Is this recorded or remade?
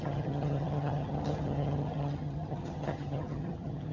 remade